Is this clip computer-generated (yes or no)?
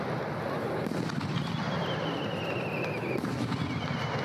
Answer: no